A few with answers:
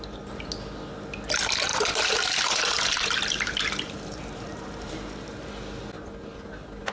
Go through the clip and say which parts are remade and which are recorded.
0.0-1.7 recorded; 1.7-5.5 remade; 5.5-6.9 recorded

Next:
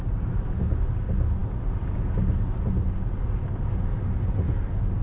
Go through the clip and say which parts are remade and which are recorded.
0.0-5.0 recorded

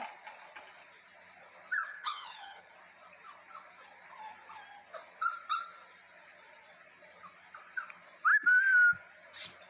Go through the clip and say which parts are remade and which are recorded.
0.0-1.9 recorded; 1.9-2.7 remade; 2.7-9.7 recorded

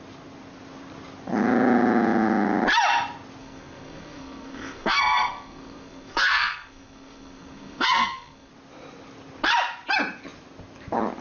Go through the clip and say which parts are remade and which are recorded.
0.0-3.4 recorded; 3.4-8.5 remade; 8.5-11.2 recorded

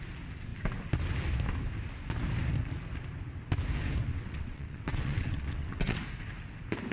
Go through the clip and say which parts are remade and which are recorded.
0.0-4.1 recorded; 4.1-6.0 remade; 6.0-6.9 recorded

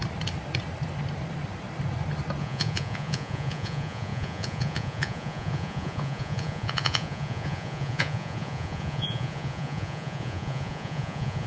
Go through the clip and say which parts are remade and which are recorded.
0.0-2.4 recorded; 2.4-11.5 remade

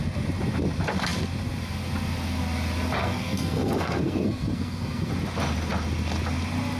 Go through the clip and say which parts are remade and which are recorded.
0.0-3.0 recorded; 3.0-5.1 remade; 5.1-6.8 recorded